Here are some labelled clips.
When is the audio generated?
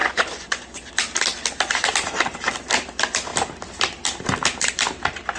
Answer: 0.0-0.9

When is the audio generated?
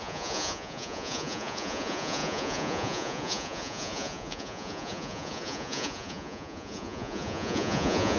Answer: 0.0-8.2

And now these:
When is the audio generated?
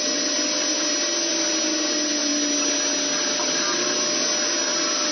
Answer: none